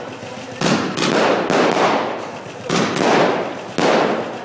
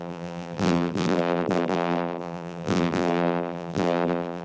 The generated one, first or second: second